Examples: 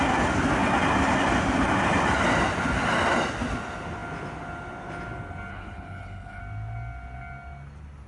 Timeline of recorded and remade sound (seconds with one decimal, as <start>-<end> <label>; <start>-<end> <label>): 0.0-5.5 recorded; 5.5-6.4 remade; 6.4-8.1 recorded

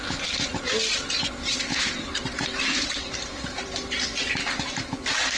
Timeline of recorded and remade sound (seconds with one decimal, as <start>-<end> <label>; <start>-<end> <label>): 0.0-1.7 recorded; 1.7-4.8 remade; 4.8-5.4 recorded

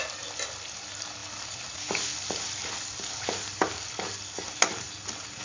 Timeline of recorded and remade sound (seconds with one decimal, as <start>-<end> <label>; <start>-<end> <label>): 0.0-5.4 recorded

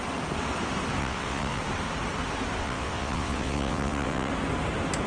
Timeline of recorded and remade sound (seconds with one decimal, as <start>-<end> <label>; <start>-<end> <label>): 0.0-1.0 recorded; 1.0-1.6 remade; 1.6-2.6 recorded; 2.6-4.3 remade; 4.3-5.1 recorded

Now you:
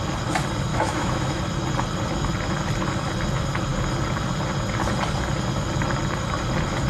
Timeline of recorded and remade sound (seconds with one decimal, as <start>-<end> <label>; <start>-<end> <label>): 0.0-0.7 recorded; 0.7-1.4 remade; 1.4-6.9 recorded